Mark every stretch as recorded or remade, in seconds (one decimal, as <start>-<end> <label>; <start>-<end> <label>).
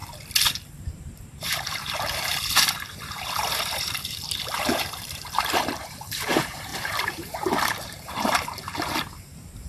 0.0-0.7 recorded; 0.7-9.7 remade